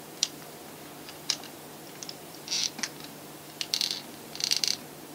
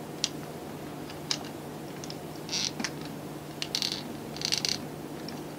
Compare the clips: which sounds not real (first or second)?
first